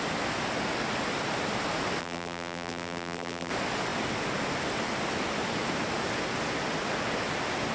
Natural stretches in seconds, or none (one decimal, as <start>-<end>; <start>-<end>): 0.0-2.0; 3.5-7.7